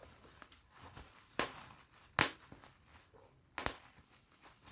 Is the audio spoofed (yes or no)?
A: no